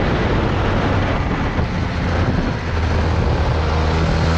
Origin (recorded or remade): recorded